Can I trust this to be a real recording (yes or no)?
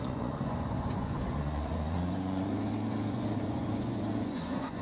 no